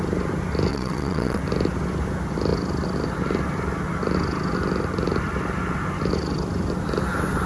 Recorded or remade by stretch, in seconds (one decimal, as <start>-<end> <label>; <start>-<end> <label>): 0.0-0.7 recorded; 0.7-1.4 remade; 1.4-7.5 recorded